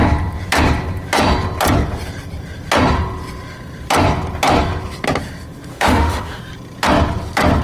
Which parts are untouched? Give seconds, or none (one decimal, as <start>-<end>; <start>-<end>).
0.0-5.7; 6.4-7.6